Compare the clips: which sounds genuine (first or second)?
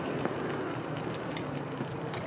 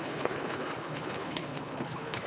first